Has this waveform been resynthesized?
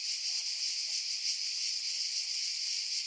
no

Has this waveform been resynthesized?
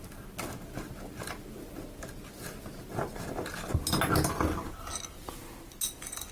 no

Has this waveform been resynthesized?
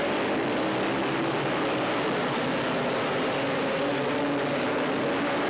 no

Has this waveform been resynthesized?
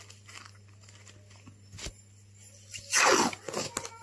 no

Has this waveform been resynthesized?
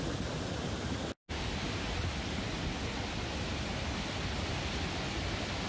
no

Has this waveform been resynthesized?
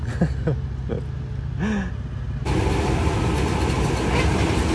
no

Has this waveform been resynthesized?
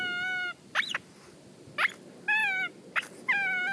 no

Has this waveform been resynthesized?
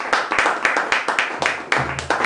no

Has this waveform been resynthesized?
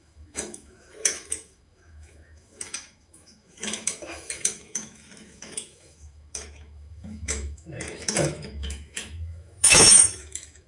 yes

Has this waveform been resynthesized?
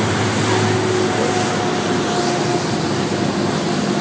no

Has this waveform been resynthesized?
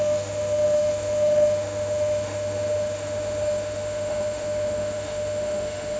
yes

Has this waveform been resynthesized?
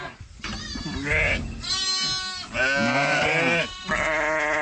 no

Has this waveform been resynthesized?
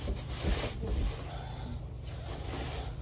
no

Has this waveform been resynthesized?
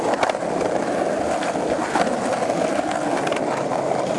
no